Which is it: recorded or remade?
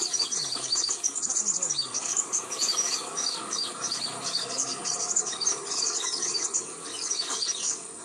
remade